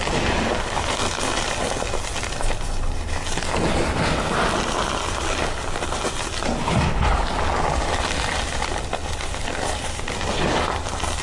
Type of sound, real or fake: real